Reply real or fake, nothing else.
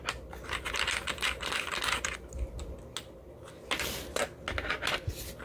real